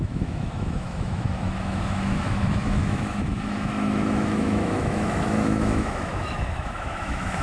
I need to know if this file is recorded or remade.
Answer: remade